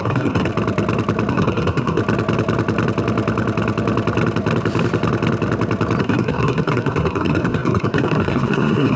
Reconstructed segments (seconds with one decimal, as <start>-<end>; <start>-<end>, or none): 0.0-0.5; 1.3-2.0; 6.0-9.0